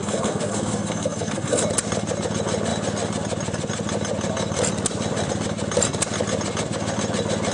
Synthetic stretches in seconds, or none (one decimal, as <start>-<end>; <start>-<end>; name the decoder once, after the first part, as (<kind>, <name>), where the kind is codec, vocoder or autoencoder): 0.0-1.6 (codec, SNAC)